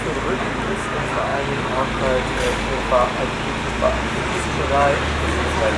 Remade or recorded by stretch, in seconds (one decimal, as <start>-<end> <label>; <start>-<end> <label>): 0.0-5.8 recorded